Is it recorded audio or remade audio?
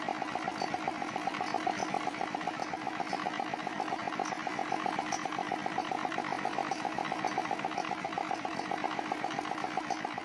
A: recorded